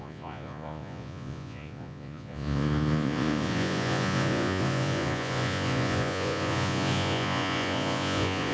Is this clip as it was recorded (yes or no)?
no